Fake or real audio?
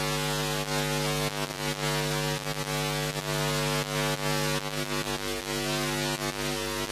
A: real